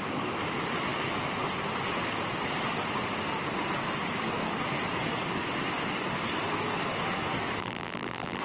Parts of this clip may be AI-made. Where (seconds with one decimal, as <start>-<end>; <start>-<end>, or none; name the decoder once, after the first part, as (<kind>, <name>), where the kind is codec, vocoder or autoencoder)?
7.6-8.4 (vocoder, BigVGAN v2)